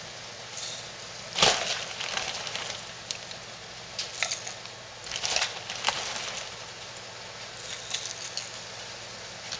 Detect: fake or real real